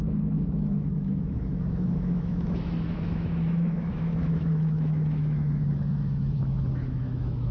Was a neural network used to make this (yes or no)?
yes